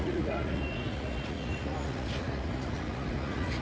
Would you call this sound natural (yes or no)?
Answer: no